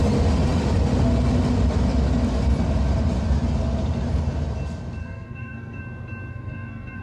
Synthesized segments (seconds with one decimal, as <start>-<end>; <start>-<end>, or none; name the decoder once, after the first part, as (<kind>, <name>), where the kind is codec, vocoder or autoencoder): 5.0-5.8 (codec, SNAC); 6.3-7.0